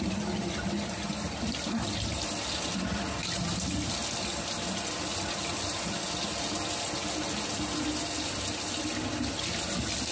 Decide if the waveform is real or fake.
real